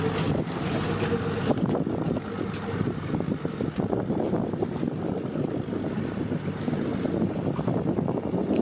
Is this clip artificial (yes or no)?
no